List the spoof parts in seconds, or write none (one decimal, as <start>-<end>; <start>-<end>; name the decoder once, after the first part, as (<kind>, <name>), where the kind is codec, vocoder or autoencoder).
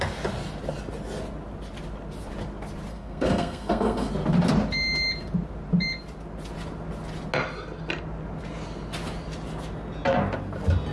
2.9-4.1 (codec, SNAC)